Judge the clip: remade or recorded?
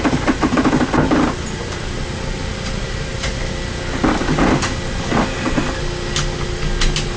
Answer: recorded